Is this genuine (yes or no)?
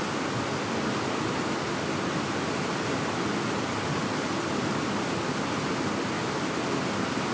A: yes